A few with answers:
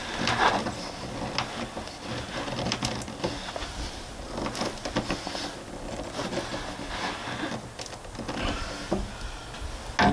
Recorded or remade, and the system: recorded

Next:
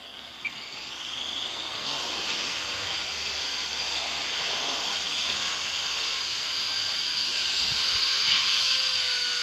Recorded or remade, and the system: remade, codec, SNAC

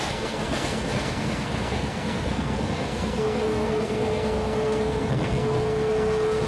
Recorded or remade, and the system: remade, codec, SNAC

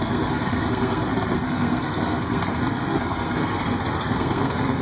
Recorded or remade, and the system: remade, codec, SNAC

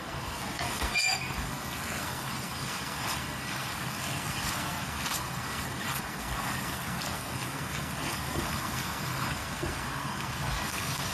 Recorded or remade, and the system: remade, codec, SNAC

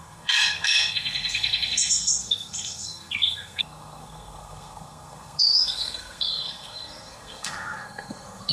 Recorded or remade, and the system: remade, codec, SNAC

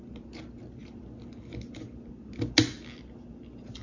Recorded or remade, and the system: recorded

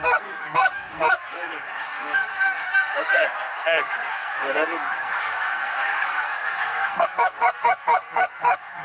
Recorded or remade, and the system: remade, codec, SNAC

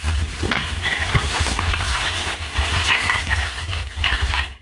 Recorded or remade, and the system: remade, codec, SNAC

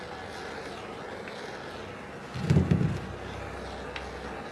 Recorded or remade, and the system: recorded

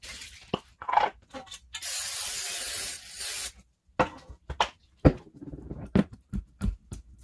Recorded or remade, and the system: recorded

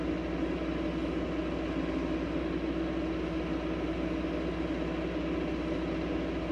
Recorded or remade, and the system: recorded